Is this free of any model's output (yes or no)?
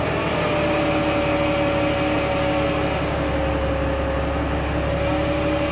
yes